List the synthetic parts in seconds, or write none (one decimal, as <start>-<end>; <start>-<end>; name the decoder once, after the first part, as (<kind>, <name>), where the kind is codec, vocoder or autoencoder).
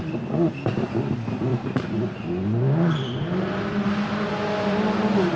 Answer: none